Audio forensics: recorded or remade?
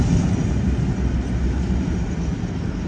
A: recorded